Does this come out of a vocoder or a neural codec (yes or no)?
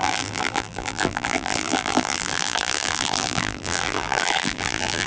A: yes